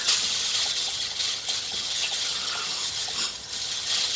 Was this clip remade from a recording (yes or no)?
yes